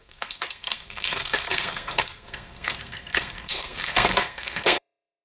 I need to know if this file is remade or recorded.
remade